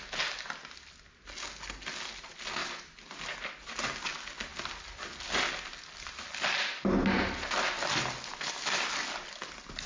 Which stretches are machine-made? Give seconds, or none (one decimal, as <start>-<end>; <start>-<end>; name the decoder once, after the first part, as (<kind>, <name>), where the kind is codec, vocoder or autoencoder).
none